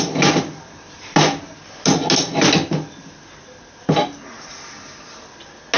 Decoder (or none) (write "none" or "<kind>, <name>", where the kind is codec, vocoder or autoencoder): none